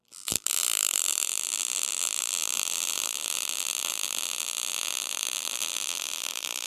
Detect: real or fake fake